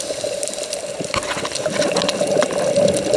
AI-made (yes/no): no